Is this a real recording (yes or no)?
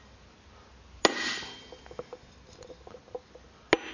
yes